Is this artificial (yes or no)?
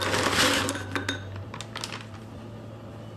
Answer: no